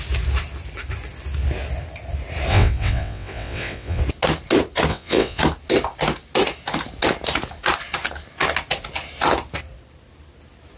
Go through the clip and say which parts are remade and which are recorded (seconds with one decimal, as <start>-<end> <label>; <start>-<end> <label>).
0.0-2.5 recorded; 2.5-4.0 remade; 4.0-4.9 recorded; 4.9-5.4 remade; 5.4-10.8 recorded

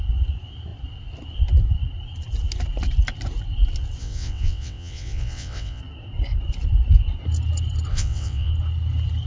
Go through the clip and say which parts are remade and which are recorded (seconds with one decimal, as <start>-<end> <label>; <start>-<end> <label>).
0.0-4.0 recorded; 4.0-5.8 remade; 5.8-7.9 recorded; 7.9-8.5 remade; 8.5-9.3 recorded

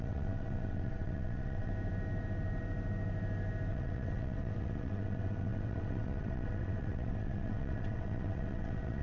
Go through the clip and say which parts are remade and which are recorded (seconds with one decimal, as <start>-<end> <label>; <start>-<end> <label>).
0.0-1.7 remade; 1.7-3.7 recorded; 3.7-9.0 remade

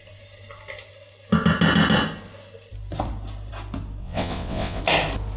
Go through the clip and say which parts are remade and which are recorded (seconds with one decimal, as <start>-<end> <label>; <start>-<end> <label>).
0.0-4.0 recorded; 4.0-4.8 remade; 4.8-5.4 recorded

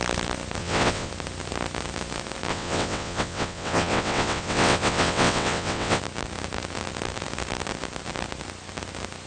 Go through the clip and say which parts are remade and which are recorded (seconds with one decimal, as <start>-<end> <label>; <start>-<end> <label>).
0.0-0.6 recorded; 0.6-1.1 remade; 1.1-2.5 recorded; 2.5-6.0 remade; 6.0-9.3 recorded

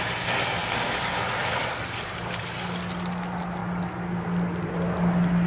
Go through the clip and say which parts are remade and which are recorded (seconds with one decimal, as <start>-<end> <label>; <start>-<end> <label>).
0.0-5.5 recorded

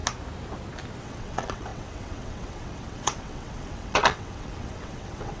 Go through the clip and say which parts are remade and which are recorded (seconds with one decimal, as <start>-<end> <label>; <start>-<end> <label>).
0.0-1.0 recorded; 1.0-5.4 remade